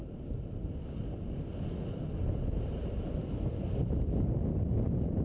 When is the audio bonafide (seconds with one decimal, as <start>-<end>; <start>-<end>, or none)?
0.0-5.2